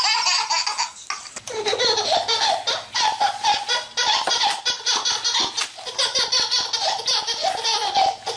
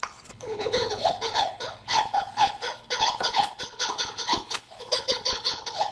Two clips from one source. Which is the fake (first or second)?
second